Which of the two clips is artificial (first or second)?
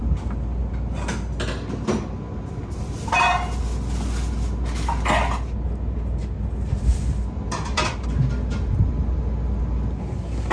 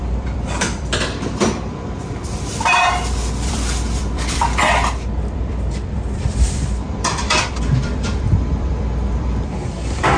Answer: second